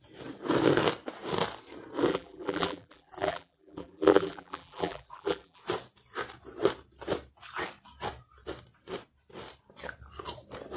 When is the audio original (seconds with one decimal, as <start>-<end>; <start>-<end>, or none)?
0.0-2.1; 5.6-10.8